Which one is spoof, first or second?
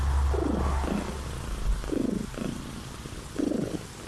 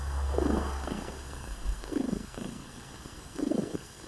second